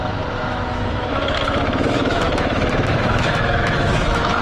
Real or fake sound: fake